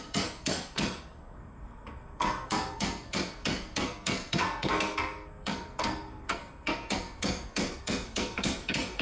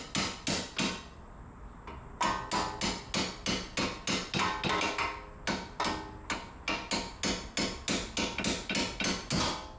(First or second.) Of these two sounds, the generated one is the first